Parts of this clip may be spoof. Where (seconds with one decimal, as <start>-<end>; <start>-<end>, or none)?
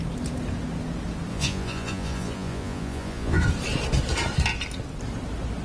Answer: 1.3-3.4